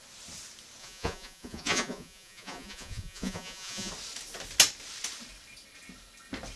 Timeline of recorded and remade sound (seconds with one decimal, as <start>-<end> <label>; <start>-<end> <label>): 0.0-0.8 recorded; 0.8-3.9 remade; 3.9-6.6 recorded